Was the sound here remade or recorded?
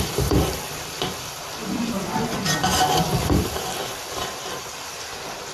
remade